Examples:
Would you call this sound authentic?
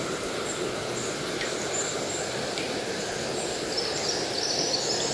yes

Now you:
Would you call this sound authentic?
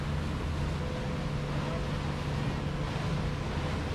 yes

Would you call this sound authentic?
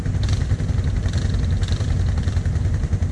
yes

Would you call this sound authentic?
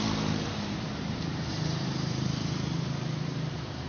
no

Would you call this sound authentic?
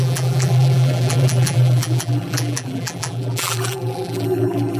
no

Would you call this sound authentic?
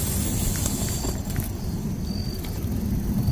yes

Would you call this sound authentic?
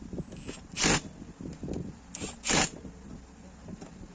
yes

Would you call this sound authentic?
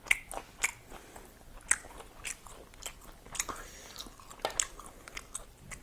yes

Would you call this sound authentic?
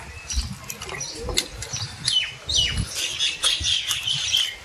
yes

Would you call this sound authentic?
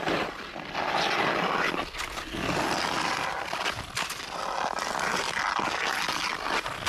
yes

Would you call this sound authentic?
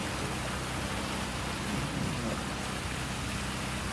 yes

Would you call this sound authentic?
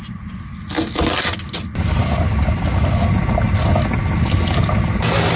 yes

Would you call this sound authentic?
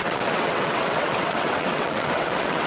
no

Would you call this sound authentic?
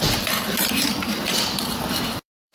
no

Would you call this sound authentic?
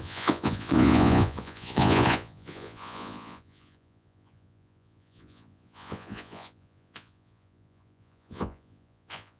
no